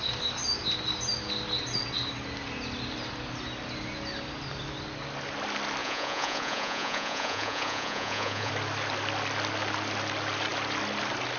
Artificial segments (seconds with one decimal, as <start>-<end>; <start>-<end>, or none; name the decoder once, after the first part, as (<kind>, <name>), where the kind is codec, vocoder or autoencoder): 5.8-8.5 (vocoder, Vocos)